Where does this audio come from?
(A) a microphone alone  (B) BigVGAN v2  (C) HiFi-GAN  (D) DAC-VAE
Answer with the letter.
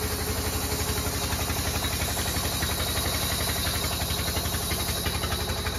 A